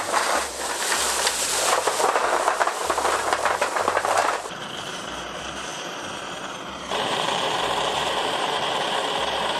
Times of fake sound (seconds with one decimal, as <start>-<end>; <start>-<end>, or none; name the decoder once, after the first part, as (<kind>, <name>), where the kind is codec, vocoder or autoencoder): 0.0-9.6 (vocoder, BigVGAN v2)